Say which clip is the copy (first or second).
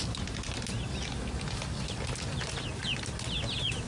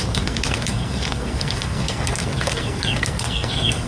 second